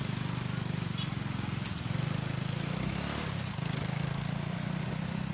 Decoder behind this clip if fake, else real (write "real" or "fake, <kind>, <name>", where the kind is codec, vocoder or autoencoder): real